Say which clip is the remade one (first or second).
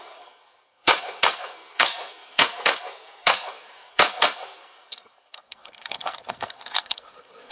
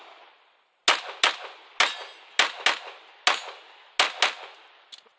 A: first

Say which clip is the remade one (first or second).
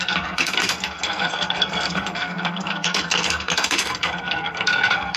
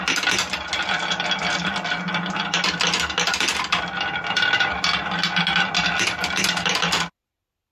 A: first